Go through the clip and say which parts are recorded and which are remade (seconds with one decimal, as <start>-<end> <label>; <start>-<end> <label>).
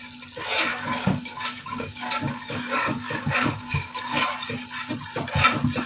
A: 0.0-0.7 recorded; 0.7-4.2 remade; 4.2-5.9 recorded